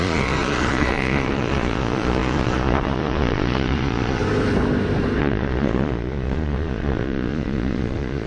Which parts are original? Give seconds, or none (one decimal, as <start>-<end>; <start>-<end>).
4.2-5.2